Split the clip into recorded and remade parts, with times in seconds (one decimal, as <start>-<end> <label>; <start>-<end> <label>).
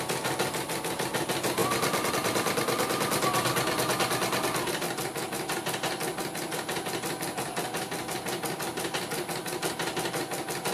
0.0-10.7 recorded